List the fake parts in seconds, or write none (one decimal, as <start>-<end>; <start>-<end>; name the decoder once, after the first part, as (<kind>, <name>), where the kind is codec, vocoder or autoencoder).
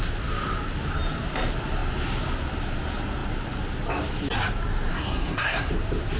4.9-5.7 (codec, SNAC)